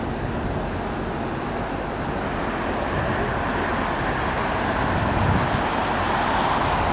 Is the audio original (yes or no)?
yes